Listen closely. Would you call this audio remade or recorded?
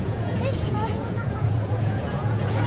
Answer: remade